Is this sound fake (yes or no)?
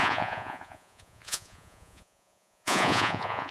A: yes